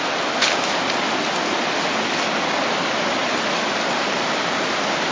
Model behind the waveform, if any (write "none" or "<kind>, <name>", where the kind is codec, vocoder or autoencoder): none